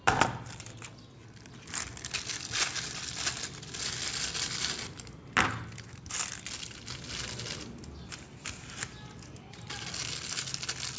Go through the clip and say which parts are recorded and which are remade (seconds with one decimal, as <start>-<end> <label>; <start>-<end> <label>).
0.0-11.0 recorded